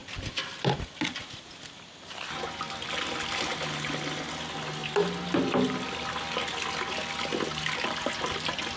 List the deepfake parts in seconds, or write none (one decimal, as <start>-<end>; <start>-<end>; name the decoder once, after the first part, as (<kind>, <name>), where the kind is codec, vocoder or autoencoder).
0.0-1.2 (vocoder, BigVGAN v2)